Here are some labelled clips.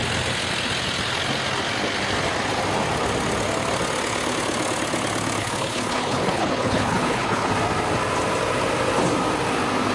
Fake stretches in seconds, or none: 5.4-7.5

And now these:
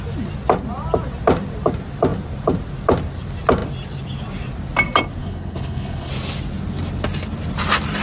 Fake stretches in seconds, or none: 5.2-6.1

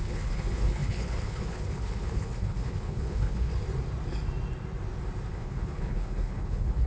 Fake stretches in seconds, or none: 0.0-3.5; 5.3-6.9

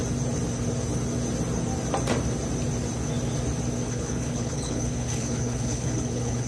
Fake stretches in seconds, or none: 3.9-6.5

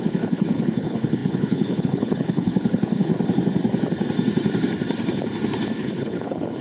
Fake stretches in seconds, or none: 0.0-3.1; 5.8-6.6

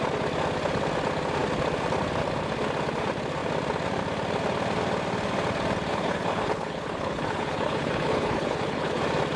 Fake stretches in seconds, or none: 5.9-9.0